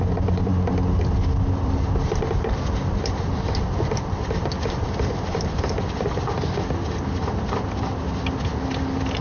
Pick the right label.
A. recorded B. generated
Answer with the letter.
B